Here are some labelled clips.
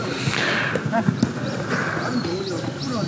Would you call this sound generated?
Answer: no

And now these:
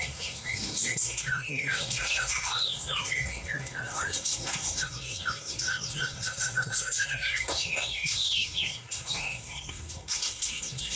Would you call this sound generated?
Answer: yes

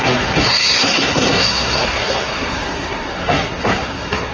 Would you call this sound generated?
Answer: yes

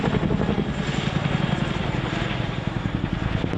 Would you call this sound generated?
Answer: no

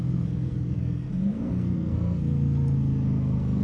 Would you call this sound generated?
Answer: yes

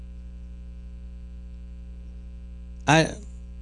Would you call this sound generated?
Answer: no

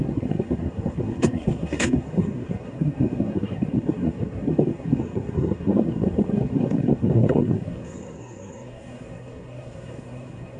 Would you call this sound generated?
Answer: yes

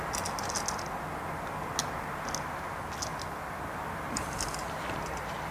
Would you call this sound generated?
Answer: no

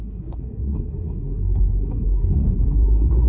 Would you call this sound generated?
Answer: yes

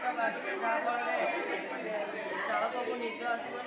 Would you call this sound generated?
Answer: no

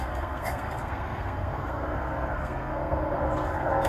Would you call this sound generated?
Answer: yes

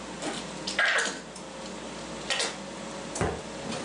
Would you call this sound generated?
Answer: no